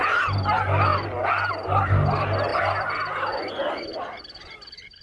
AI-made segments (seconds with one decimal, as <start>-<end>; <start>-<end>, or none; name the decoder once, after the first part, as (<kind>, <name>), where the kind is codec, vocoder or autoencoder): none